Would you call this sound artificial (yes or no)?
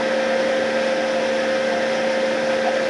no